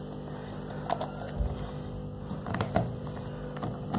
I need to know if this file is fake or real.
real